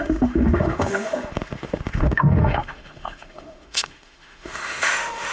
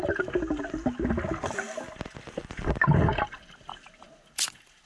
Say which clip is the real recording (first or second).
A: second